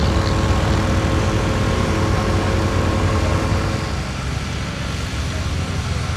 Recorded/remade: recorded